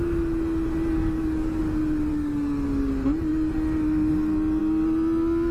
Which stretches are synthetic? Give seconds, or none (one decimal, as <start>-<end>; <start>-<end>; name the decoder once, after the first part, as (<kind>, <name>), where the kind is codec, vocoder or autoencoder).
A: 1.0-1.6 (codec, DAC); 2.1-2.9